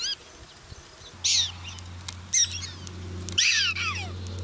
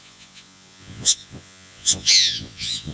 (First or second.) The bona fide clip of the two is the first